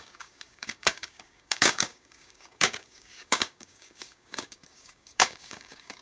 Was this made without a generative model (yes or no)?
no